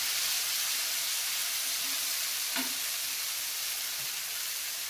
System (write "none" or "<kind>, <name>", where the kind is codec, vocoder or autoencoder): none